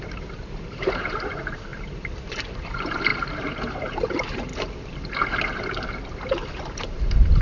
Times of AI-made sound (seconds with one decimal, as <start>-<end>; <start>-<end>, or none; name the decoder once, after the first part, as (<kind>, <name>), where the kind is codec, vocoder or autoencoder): 0.0-1.7 (vocoder, BigVGAN v2); 2.5-4.5; 6.8-7.4